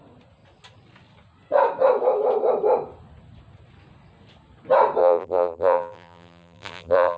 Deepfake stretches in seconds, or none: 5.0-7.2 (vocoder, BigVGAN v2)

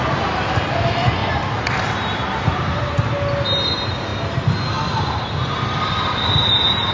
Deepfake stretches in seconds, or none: 1.2-2.9 (vocoder, BigVGAN v2)

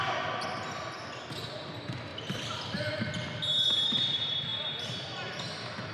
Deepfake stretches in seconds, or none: 2.1-3.0 (vocoder, BigVGAN v2)